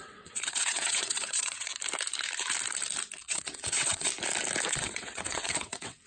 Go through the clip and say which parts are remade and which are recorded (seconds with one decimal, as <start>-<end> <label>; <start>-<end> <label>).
0.0-1.7 remade; 1.7-3.2 recorded; 3.2-4.1 remade; 4.1-4.7 recorded; 4.7-6.1 remade